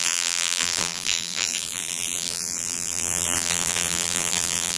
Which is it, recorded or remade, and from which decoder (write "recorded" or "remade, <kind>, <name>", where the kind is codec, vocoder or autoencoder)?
remade, vocoder, BigVGAN v2